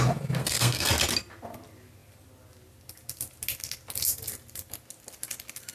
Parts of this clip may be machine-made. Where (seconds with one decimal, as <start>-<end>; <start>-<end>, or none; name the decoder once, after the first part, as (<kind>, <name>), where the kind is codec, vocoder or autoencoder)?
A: 0.4-0.9 (codec, SNAC)